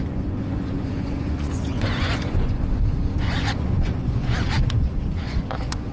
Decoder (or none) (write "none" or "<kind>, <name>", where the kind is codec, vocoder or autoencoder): vocoder, Vocos